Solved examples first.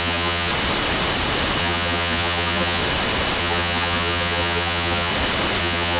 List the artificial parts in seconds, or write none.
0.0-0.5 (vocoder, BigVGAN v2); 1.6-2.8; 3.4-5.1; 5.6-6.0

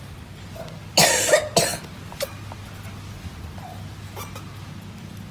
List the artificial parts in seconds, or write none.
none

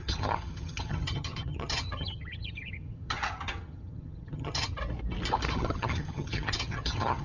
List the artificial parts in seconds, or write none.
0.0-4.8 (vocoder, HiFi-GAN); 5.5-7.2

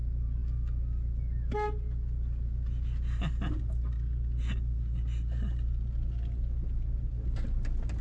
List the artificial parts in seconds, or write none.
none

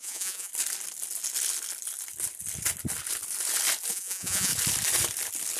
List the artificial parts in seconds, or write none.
0.0-0.5 (vocoder, Vocos); 3.9-4.5